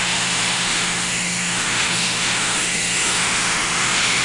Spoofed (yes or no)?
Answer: yes